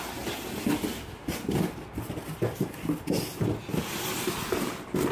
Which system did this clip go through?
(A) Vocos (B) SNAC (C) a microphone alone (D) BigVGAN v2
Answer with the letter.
C